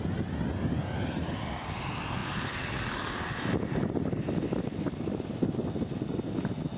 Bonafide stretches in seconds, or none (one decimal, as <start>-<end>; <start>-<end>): 0.0-6.8